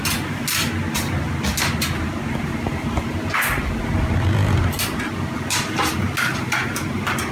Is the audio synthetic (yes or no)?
no